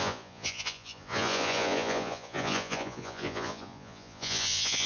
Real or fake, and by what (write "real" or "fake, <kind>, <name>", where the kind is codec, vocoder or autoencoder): fake, vocoder, Vocos